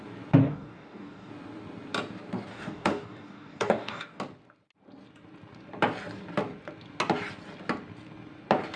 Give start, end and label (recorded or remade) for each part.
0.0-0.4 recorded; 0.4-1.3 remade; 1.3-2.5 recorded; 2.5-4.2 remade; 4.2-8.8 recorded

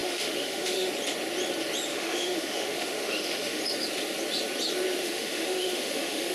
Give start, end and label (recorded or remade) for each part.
0.0-0.9 remade; 0.9-1.9 recorded; 1.9-3.6 remade; 3.6-5.0 recorded; 5.0-6.3 remade

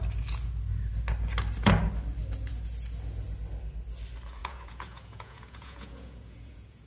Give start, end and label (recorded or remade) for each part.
0.0-4.4 recorded; 4.4-6.9 remade

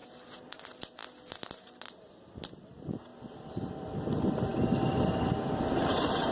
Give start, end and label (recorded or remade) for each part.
0.0-0.6 recorded; 0.6-3.1 remade; 3.1-3.7 recorded; 3.7-4.5 remade; 4.5-5.1 recorded; 5.1-6.3 remade